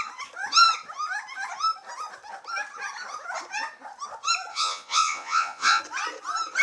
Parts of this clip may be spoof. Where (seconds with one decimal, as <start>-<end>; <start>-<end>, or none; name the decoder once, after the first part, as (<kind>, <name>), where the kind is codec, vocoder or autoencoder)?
4.5-5.8 (vocoder, Vocos)